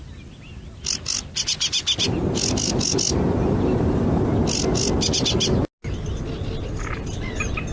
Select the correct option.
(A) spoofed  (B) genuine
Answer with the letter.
B